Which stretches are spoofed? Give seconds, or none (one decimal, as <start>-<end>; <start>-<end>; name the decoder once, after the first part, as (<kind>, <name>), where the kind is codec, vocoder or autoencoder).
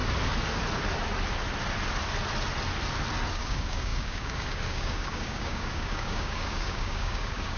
3.3-7.6 (codec, DAC)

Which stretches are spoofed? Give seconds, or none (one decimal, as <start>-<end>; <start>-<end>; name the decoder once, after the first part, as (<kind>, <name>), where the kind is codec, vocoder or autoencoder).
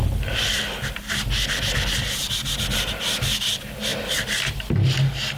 none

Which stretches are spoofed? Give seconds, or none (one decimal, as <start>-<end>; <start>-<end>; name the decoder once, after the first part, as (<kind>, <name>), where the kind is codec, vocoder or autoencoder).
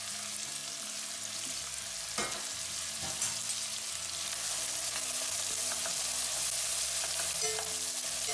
none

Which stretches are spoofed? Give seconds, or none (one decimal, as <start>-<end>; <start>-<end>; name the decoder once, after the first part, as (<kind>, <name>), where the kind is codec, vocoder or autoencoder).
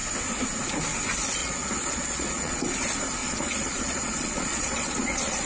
1.4-2.6 (vocoder, Vocos); 3.2-5.5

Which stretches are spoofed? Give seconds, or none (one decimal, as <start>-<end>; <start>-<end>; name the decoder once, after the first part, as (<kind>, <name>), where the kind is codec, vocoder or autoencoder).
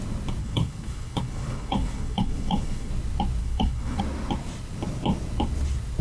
0.4-2.9 (codec, HILCodec); 3.4-4.0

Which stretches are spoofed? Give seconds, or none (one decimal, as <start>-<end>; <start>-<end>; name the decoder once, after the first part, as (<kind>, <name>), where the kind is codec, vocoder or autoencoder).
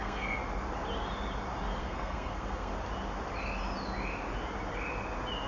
0.0-0.4 (codec, SNAC); 1.8-2.7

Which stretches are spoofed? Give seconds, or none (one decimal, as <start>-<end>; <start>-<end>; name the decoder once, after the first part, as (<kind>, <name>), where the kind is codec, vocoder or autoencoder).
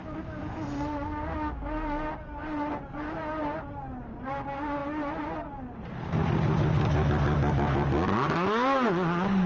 none